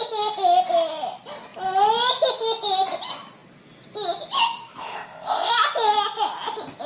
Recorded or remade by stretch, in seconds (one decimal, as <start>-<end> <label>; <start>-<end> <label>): 0.0-4.8 recorded; 4.8-5.5 remade; 5.5-6.9 recorded